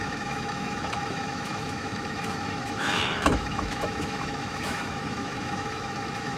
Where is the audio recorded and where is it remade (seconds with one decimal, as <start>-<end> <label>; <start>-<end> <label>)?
0.0-6.4 remade